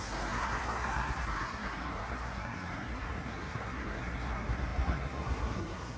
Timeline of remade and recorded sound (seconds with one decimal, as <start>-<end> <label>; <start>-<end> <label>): 0.0-6.0 remade